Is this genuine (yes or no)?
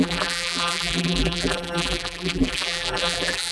no